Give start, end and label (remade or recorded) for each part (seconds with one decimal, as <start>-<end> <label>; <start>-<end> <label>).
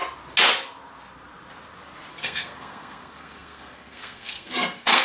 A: 0.0-2.2 recorded; 2.2-5.0 remade